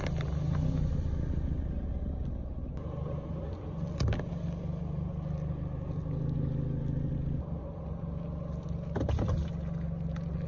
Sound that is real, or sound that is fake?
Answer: real